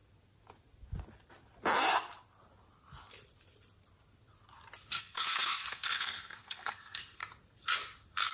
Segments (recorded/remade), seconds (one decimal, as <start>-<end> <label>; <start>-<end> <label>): 0.0-5.0 recorded; 5.0-7.2 remade; 7.2-8.3 recorded